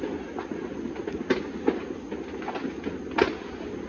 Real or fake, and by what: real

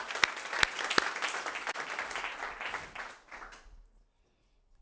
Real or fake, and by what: real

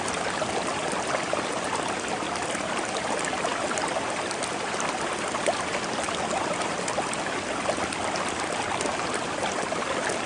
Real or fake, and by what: real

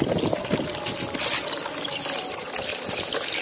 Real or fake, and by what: real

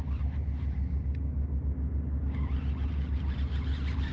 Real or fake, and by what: real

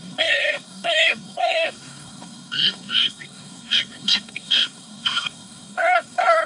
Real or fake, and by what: fake, codec, SNAC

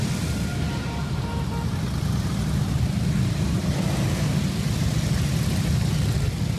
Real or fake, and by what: real